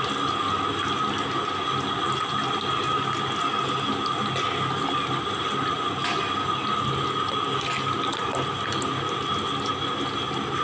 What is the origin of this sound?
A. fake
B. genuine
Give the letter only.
B